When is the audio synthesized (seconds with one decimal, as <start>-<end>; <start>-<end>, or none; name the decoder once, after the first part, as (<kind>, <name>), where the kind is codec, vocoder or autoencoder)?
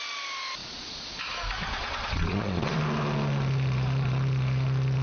0.6-1.2 (vocoder, Vocos); 1.6-2.8